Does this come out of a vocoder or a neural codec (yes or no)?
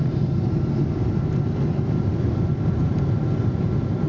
no